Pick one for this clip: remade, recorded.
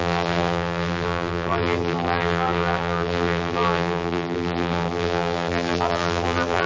remade